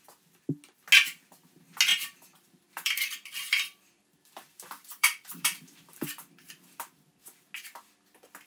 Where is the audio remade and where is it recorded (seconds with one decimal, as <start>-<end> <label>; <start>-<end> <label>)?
0.0-1.9 recorded; 1.9-7.0 remade; 7.0-8.5 recorded